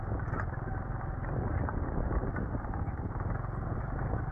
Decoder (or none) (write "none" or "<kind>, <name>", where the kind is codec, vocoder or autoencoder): none